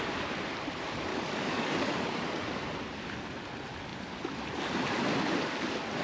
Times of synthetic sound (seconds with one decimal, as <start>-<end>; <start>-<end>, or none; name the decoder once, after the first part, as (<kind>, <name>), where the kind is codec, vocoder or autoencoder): 1.1-2.4 (codec, DAC)